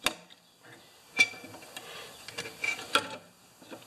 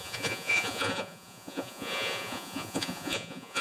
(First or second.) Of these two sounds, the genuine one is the first